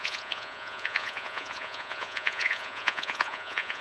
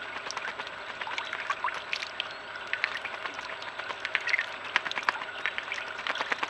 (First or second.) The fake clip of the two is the first